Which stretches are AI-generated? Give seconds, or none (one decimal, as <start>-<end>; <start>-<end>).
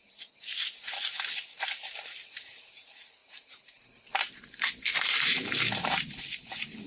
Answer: 0.0-6.9